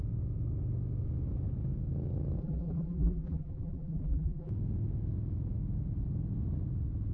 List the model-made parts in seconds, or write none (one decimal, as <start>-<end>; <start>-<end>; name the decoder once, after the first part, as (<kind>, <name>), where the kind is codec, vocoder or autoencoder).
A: 2.4-4.5 (vocoder, BigVGAN v2)